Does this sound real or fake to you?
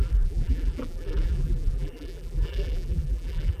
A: fake